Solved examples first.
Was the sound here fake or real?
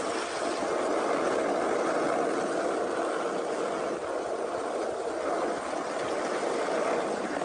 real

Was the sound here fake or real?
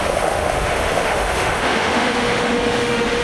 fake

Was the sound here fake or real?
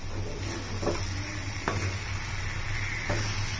real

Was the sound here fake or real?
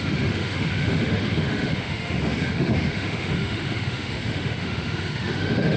fake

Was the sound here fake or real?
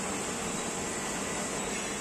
real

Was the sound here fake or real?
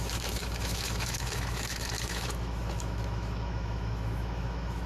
fake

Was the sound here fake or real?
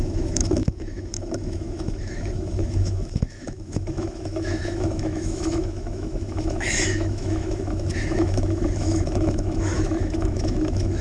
fake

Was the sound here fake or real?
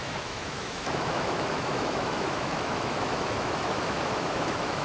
fake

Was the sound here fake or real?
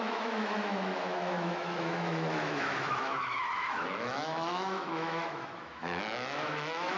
fake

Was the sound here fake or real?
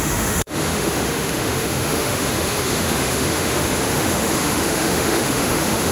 fake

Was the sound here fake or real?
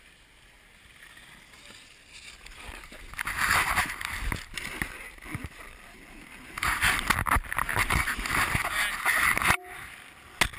real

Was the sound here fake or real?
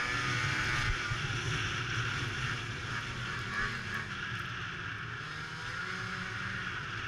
real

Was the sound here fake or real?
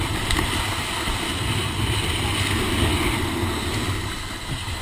real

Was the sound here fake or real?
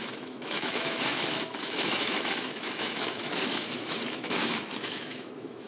fake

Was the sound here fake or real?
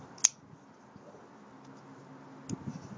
real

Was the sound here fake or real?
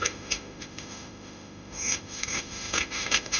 fake